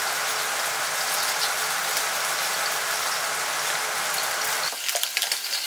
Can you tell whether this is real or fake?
real